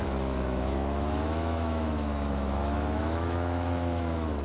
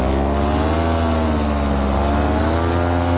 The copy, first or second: first